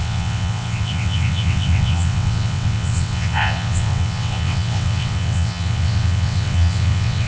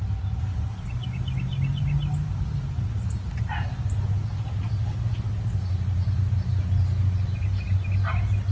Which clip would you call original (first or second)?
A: second